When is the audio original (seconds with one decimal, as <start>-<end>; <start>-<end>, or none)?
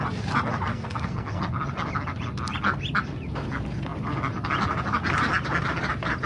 0.0-0.7; 1.5-6.3